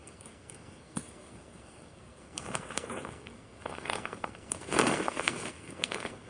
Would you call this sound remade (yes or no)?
yes